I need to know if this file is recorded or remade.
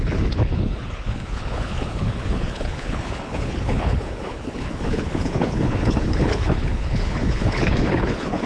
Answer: remade